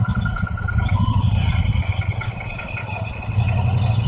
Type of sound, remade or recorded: recorded